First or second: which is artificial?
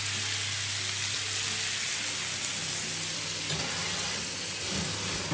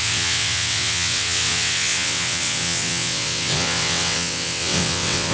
second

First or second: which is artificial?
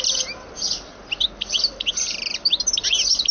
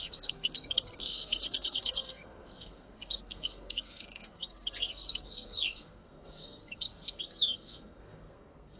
second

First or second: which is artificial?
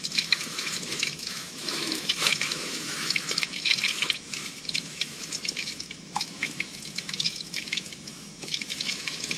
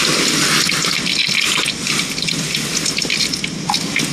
first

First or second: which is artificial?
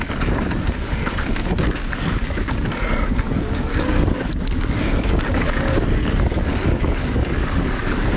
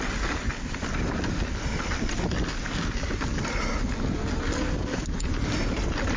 first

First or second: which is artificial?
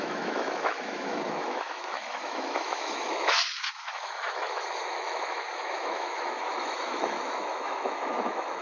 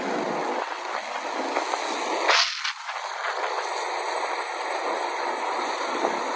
first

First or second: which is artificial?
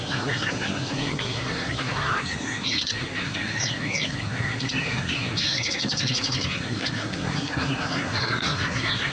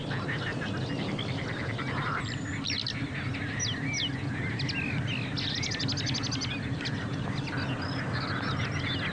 first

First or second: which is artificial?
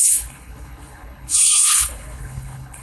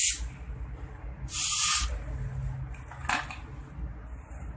first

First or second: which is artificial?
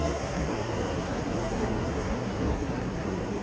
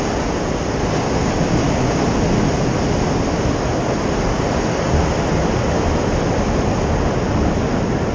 first